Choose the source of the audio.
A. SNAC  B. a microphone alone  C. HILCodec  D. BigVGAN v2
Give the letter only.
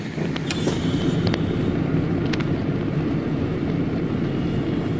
B